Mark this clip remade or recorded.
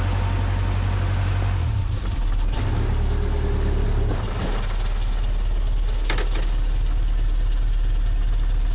recorded